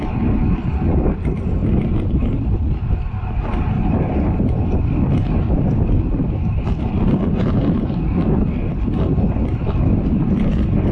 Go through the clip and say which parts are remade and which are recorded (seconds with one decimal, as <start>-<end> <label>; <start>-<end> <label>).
0.0-10.9 recorded